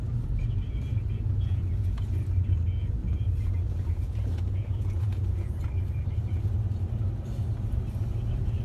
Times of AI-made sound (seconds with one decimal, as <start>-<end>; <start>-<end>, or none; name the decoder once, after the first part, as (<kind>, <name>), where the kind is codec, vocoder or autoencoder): 1.3-2.1 (vocoder, Vocos); 3.0-5.6